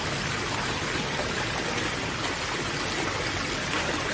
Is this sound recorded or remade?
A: recorded